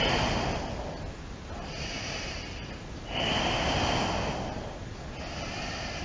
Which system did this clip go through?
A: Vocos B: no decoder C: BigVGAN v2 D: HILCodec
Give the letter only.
B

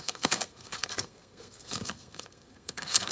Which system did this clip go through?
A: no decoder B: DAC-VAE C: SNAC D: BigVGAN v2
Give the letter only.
C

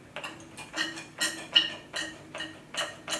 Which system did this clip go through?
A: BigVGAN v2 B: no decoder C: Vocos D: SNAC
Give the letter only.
B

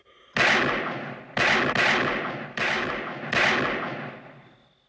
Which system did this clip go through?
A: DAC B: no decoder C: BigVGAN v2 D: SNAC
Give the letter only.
B